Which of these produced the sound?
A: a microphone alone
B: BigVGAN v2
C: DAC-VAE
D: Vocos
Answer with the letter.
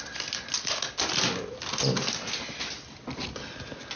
A